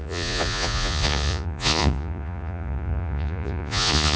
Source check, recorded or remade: remade